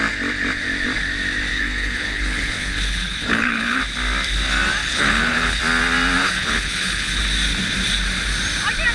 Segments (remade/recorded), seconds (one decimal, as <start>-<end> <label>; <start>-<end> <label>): 0.0-1.5 recorded; 1.5-3.8 remade; 3.8-4.8 recorded; 4.8-5.6 remade; 5.6-6.2 recorded; 6.2-7.2 remade; 7.2-8.9 recorded